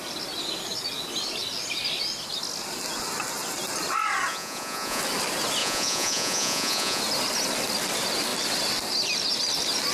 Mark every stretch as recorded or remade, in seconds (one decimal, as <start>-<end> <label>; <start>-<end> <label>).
0.0-4.3 recorded; 4.3-5.0 remade; 5.0-5.6 recorded; 5.6-7.0 remade; 7.0-9.9 recorded